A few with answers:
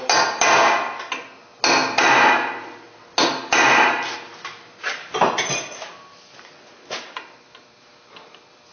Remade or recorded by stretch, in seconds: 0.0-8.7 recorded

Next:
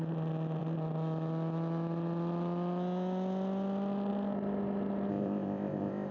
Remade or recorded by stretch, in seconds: 0.0-5.1 recorded; 5.1-6.1 remade